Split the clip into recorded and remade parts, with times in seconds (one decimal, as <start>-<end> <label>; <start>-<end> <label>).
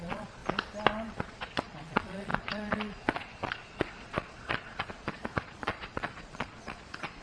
0.0-0.4 remade; 0.4-1.1 recorded; 1.1-7.2 remade